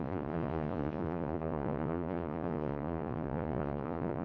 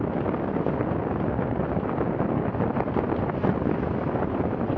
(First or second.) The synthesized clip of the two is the first